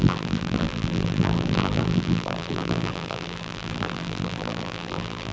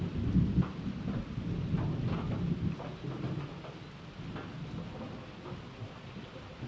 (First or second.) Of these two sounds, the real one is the second